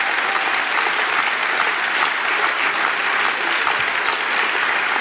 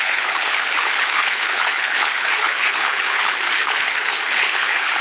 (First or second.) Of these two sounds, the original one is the first